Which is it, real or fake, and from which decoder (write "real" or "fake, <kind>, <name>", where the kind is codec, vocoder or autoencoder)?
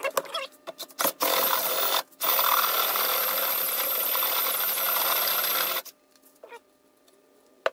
real